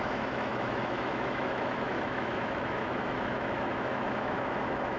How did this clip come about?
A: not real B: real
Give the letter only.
A